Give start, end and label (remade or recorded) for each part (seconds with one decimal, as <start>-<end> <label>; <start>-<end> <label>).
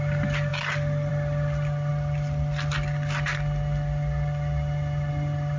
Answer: 0.0-5.6 recorded